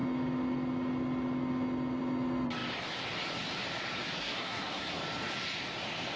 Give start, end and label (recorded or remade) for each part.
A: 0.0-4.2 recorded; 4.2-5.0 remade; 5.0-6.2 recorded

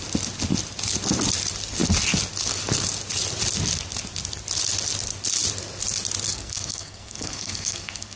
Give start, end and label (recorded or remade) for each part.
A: 0.0-6.3 recorded; 6.3-8.2 remade

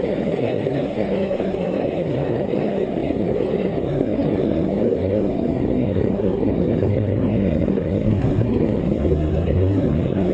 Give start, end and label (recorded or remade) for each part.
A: 0.0-10.3 remade